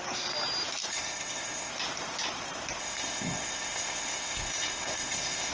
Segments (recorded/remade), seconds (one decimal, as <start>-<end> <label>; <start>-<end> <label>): 0.0-0.9 recorded; 0.9-1.7 remade; 1.7-2.8 recorded; 2.8-5.5 remade